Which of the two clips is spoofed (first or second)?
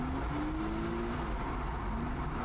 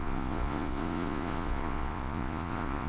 second